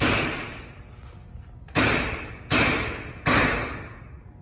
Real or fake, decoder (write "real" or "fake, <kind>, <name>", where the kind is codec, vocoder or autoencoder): real